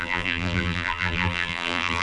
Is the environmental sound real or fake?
fake